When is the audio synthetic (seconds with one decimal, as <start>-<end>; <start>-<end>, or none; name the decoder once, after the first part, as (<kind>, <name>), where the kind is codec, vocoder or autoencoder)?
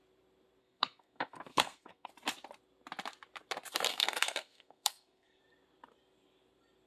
0.6-2.1 (codec, SNAC); 3.9-5.4